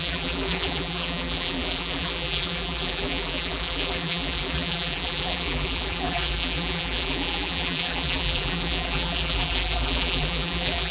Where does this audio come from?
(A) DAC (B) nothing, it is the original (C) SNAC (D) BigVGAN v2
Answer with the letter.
D